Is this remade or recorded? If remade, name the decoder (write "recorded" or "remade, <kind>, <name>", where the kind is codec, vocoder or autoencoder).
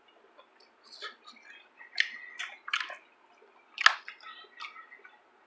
recorded